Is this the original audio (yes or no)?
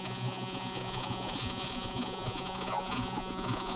no